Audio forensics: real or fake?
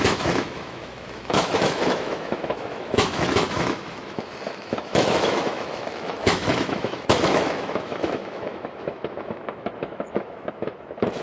fake